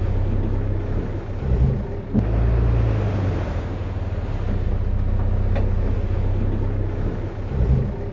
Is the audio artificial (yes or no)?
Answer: no